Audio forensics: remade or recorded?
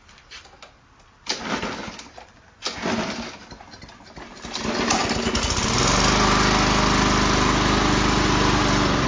recorded